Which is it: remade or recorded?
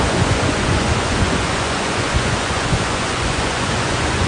remade